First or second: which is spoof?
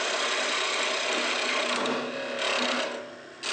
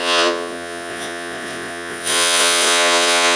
second